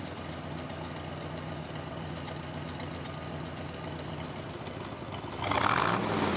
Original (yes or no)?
yes